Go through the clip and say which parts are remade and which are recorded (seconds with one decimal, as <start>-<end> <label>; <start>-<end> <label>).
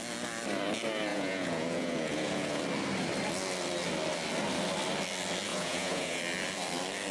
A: 0.0-1.1 recorded; 1.1-2.6 remade; 2.6-5.5 recorded; 5.5-6.2 remade; 6.2-7.1 recorded